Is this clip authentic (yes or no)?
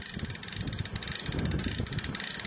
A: yes